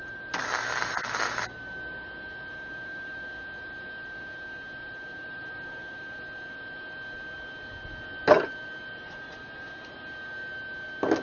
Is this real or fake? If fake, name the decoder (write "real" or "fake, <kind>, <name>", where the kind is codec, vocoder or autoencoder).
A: real